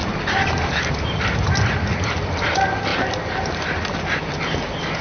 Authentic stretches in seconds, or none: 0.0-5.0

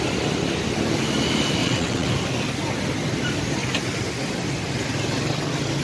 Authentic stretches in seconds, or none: 0.0-1.6; 2.1-5.8